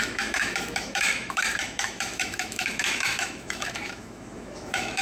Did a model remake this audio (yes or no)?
yes